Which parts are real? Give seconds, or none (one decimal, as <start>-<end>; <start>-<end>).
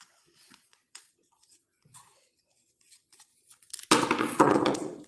3.3-4.2